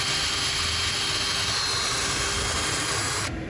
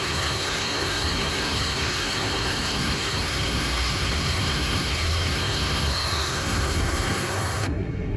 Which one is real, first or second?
first